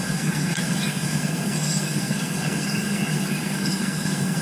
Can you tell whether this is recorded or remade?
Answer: remade